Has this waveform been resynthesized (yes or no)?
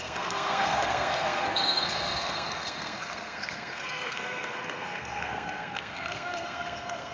yes